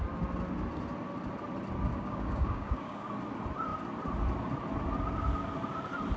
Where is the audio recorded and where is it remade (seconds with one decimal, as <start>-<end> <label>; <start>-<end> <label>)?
0.0-1.9 recorded; 1.9-3.1 remade; 3.1-6.2 recorded

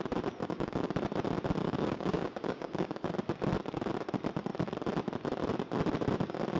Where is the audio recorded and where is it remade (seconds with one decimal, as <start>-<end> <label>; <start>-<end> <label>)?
0.0-0.4 recorded; 0.4-0.9 remade; 0.9-1.6 recorded; 1.6-3.1 remade; 3.1-6.6 recorded

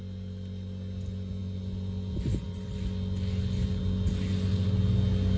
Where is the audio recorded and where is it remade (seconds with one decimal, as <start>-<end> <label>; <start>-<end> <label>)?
0.0-5.4 recorded

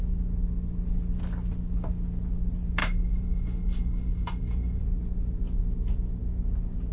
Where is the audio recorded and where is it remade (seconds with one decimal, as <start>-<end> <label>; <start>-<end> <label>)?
0.0-2.8 recorded; 2.8-4.8 remade; 4.8-6.9 recorded

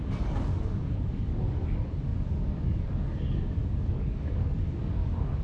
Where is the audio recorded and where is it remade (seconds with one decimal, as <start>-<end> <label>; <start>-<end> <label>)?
0.0-5.4 remade

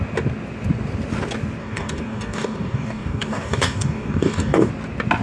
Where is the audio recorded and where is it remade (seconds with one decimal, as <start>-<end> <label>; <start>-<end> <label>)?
0.0-1.6 recorded; 1.6-4.7 remade; 4.7-5.2 recorded

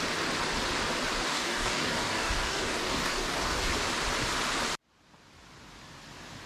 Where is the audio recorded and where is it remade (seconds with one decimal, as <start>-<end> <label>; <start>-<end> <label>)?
0.0-1.3 recorded; 1.3-3.7 remade; 3.7-6.5 recorded